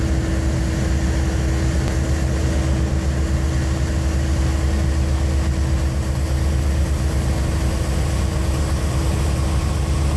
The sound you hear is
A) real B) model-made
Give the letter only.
A